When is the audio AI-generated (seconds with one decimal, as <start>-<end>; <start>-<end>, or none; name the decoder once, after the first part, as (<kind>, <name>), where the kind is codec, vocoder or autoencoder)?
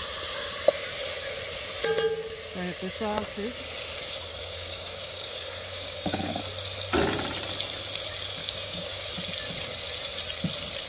4.3-6.4 (codec, DAC); 8.4-9.1